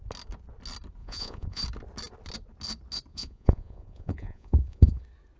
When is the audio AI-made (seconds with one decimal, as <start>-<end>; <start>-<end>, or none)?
1.0-1.6; 3.1-5.0